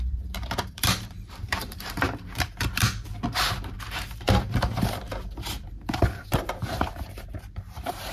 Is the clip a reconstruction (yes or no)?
yes